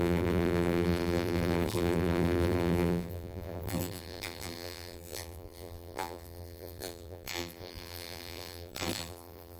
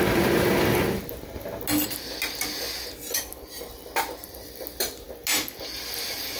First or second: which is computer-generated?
first